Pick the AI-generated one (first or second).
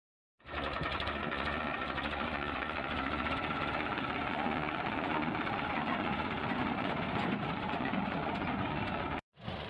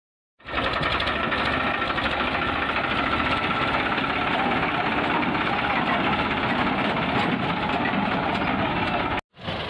first